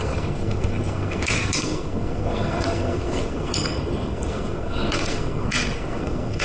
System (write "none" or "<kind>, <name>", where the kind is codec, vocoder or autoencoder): codec, SNAC